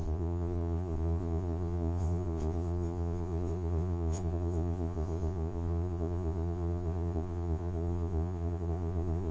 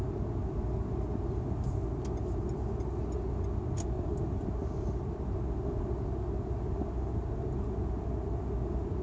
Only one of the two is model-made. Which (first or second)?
first